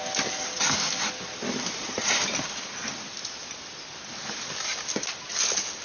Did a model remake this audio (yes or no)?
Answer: no